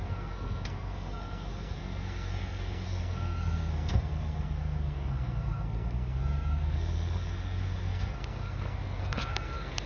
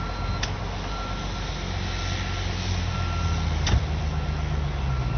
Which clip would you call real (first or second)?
second